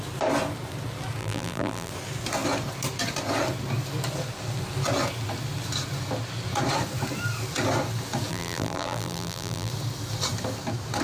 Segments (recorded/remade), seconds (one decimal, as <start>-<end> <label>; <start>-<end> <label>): 0.0-1.2 recorded; 1.2-1.9 remade; 1.9-8.3 recorded; 8.3-9.7 remade; 9.7-11.0 recorded